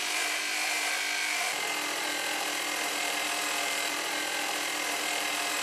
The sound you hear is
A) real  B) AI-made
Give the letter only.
B